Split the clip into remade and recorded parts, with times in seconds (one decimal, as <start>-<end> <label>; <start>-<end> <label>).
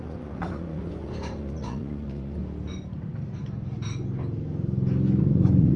0.0-2.4 remade; 2.4-5.2 recorded; 5.2-5.8 remade